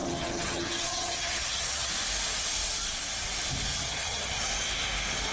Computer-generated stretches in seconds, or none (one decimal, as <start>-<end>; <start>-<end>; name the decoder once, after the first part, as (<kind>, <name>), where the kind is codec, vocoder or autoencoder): 0.0-1.9 (vocoder, HiFi-GAN); 3.7-4.4